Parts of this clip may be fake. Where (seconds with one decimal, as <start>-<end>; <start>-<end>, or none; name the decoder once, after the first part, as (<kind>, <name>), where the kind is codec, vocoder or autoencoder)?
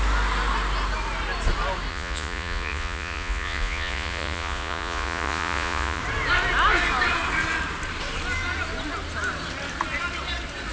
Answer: 1.9-6.0 (vocoder, Vocos)